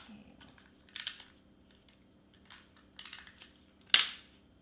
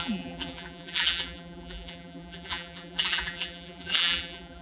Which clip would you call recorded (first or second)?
first